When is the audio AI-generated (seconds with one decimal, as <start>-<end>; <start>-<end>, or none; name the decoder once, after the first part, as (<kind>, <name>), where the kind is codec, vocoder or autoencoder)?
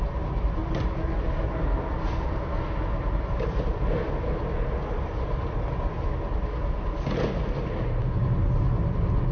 none